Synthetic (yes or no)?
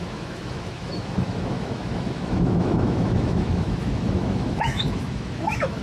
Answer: yes